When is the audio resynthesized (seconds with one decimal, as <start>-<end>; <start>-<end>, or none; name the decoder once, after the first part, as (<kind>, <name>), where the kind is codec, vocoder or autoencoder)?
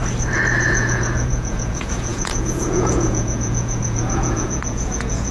0.6-5.3 (vocoder, Vocos)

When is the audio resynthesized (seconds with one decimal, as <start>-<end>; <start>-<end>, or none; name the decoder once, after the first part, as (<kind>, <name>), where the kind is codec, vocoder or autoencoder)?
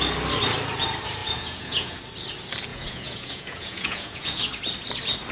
1.2-2.0 (vocoder, Vocos); 2.7-4.4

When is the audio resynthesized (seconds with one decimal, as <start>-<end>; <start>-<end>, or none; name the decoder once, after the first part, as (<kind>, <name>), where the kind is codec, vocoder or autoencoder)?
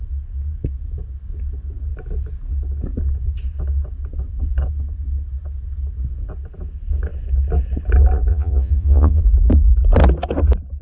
8.3-9.2 (vocoder, Vocos)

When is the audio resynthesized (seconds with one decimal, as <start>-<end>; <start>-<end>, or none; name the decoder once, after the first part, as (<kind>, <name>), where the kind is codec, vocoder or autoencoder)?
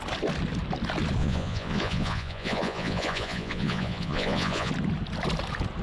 1.2-4.7 (vocoder, Vocos)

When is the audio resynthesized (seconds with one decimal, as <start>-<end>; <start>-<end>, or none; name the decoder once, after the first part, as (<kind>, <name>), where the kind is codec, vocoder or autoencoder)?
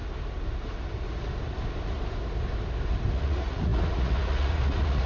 3.1-5.1 (vocoder, Vocos)